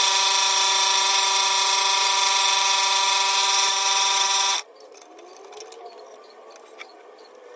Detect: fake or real real